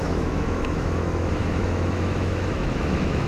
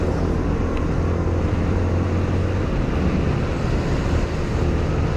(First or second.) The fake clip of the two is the first